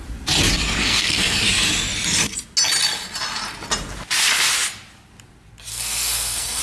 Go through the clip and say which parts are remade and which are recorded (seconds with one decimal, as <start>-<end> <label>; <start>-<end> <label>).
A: 0.0-0.8 recorded; 0.8-1.4 remade; 1.4-5.7 recorded; 5.7-6.6 remade